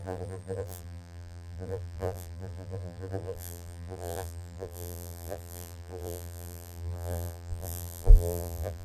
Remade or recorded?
remade